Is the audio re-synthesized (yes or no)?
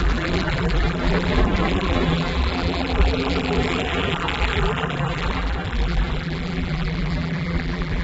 yes